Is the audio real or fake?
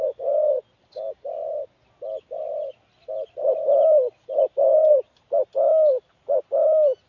real